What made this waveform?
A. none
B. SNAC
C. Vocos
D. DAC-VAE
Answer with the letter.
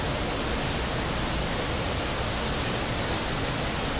A